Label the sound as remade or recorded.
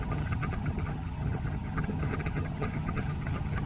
remade